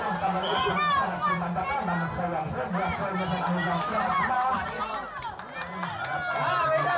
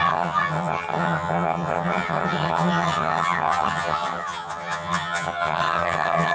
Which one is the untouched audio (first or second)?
first